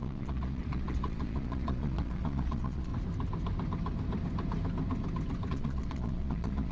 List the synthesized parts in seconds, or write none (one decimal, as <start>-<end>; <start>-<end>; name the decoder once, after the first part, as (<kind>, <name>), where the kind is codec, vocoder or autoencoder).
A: 0.0-2.9 (vocoder, Vocos); 5.5-6.7